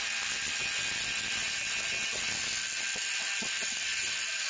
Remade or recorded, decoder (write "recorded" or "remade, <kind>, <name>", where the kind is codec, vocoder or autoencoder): recorded